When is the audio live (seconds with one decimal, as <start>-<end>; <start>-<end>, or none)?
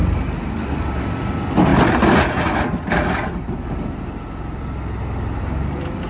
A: 0.0-6.1